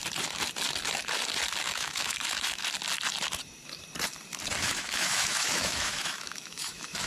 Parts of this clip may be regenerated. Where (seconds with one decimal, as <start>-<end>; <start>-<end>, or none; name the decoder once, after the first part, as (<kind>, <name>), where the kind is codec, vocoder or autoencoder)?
1.6-2.6 (autoencoder, DAC-VAE); 4.6-7.1